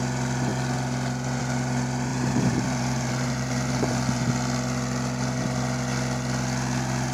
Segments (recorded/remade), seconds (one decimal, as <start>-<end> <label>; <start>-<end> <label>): 0.0-2.1 recorded; 2.1-4.3 remade; 4.3-7.1 recorded